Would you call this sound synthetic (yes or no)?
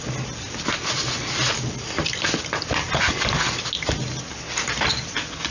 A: no